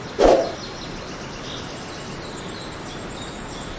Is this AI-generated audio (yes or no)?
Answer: no